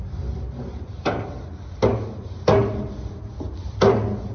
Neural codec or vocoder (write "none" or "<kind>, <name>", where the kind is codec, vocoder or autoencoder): none